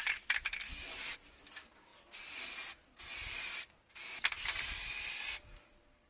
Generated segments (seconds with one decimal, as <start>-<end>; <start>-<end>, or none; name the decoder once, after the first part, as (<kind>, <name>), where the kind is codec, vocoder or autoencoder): none